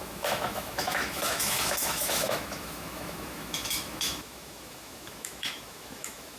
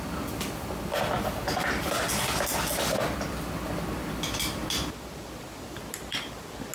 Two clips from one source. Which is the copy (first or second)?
first